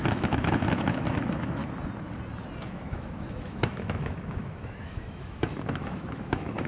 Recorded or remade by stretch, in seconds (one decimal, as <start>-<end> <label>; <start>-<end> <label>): 0.0-1.6 remade; 1.6-2.7 recorded; 2.7-6.7 remade